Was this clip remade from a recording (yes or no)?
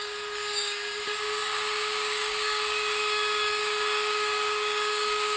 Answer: yes